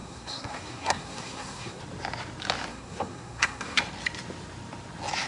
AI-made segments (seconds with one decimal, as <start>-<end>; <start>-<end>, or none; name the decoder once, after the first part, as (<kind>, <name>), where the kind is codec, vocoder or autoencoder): 0.0-1.8 (codec, SNAC); 2.7-3.8